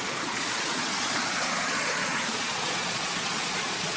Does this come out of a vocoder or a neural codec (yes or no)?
yes